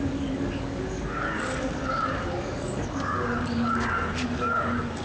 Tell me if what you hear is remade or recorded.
remade